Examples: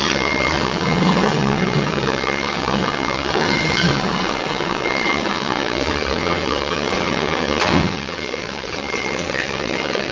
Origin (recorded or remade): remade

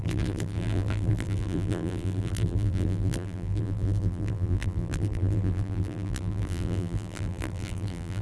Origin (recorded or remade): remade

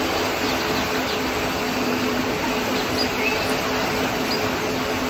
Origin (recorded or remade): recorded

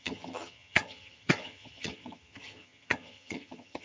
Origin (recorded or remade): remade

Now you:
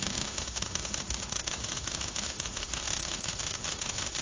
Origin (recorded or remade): remade